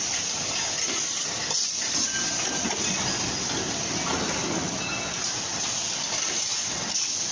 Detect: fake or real real